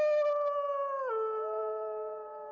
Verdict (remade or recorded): recorded